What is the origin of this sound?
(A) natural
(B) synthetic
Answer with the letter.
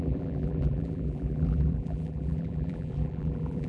B